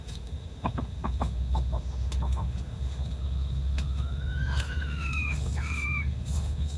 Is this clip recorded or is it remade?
remade